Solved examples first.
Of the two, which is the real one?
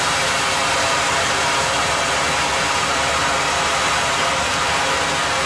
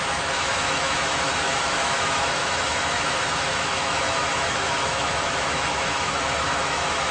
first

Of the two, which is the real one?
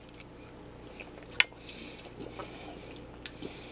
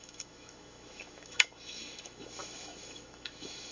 first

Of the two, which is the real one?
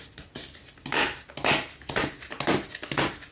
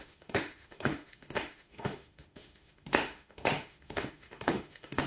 first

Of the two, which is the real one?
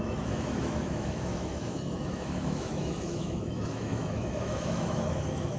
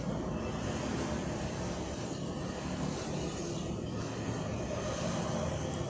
second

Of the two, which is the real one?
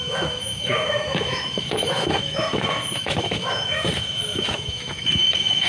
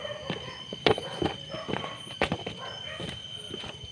second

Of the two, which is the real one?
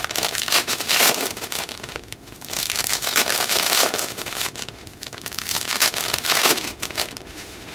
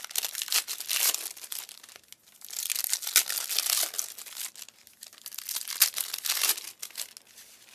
second